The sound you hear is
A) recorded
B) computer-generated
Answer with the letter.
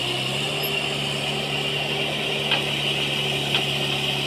A